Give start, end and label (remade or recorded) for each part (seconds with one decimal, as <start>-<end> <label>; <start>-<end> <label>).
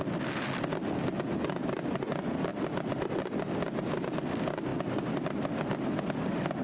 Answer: 0.0-6.6 recorded